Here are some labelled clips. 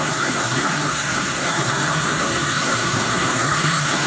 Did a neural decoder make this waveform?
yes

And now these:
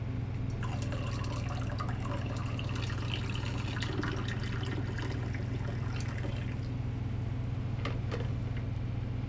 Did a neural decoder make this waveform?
no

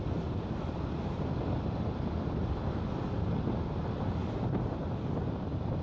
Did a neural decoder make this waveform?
no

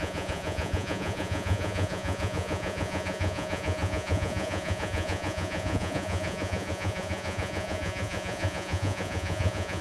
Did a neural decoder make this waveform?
yes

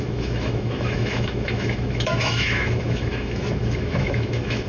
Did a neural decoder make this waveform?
yes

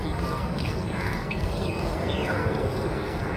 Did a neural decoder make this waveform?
yes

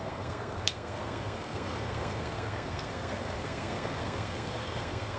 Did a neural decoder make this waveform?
yes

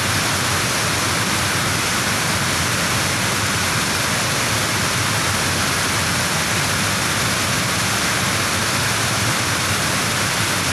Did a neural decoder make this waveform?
no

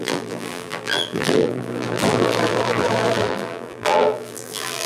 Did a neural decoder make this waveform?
yes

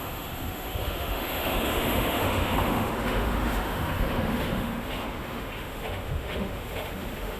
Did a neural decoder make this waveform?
yes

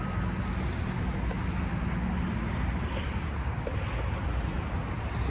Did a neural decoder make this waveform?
no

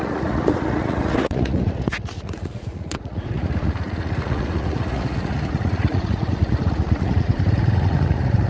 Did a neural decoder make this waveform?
yes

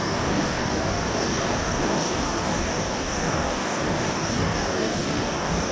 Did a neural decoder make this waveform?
yes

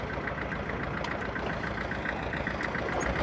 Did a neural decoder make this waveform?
no